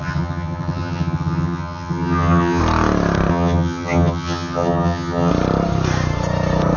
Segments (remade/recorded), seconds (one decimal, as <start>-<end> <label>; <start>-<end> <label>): 0.0-2.6 remade; 2.6-3.3 recorded; 3.3-5.3 remade; 5.3-6.8 recorded